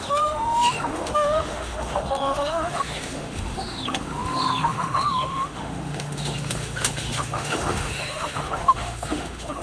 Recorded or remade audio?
remade